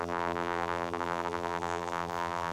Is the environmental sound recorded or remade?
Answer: remade